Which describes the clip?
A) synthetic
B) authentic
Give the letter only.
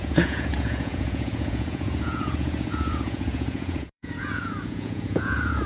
A